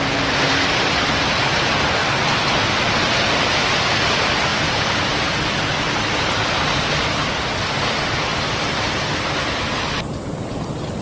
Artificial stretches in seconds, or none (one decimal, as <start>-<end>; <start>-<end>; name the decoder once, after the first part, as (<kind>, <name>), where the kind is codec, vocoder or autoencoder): none